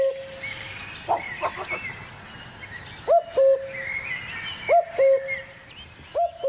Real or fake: real